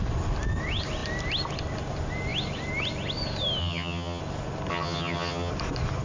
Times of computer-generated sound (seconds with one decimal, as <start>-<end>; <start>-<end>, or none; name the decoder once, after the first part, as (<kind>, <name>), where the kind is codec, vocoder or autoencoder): 3.6-4.2 (vocoder, HiFi-GAN); 4.7-5.5